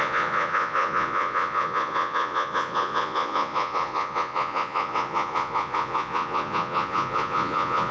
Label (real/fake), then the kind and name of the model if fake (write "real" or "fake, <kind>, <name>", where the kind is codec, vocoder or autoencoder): fake, vocoder, Vocos